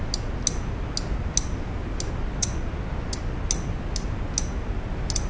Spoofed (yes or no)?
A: no